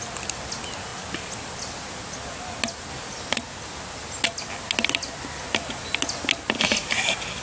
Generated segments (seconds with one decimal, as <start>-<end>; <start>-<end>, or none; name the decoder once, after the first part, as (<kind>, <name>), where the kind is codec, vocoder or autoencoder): none